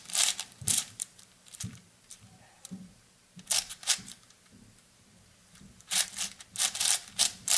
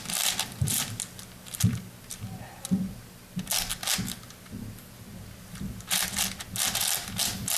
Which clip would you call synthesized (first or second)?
first